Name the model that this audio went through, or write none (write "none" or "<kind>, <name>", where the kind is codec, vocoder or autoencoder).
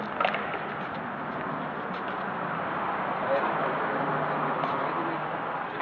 none